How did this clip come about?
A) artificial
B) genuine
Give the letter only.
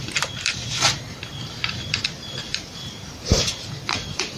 A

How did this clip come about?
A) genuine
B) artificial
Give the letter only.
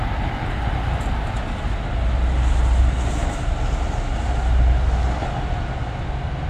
A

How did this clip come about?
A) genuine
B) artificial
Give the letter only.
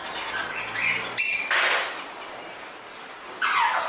A